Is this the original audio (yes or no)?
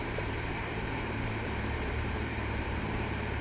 no